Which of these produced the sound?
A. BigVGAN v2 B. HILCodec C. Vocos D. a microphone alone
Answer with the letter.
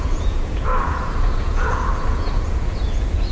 C